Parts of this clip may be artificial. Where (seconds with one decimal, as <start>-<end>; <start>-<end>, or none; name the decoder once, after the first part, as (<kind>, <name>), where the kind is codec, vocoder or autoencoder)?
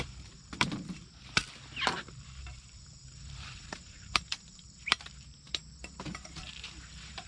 0.0-1.4 (vocoder, BigVGAN v2); 2.0-5.6; 6.2-7.3